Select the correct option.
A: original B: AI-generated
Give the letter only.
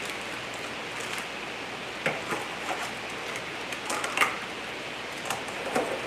A